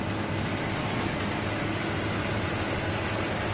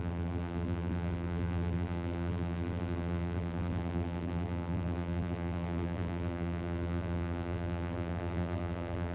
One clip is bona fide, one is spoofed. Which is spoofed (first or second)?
second